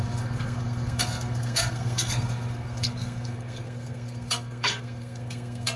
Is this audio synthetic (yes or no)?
yes